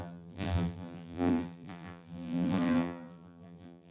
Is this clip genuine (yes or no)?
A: no